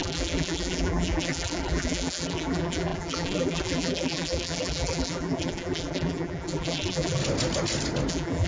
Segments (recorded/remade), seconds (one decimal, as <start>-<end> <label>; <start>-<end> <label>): 0.0-7.2 remade; 7.2-8.1 recorded; 8.1-8.5 remade